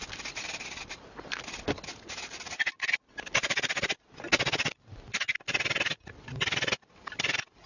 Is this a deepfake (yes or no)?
no